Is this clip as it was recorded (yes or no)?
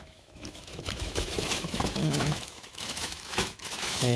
no